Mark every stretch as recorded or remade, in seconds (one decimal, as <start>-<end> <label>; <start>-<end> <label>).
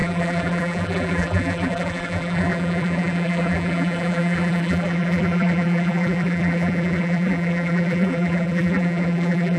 0.0-9.6 remade